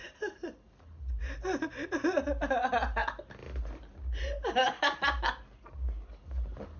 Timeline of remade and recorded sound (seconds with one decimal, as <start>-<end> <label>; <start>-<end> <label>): 0.0-6.8 recorded